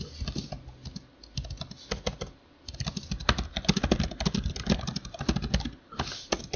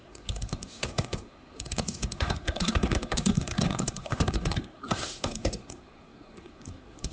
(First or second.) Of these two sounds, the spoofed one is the second